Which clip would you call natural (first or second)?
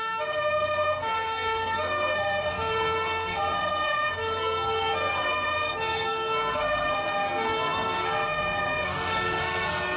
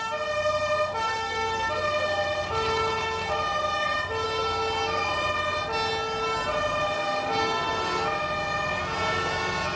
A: second